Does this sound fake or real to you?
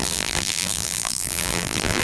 fake